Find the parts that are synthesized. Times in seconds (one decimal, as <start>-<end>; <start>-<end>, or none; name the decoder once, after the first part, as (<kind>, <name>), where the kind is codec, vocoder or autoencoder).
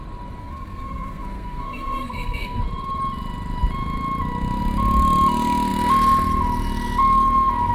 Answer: 0.4-2.6 (codec, SNAC)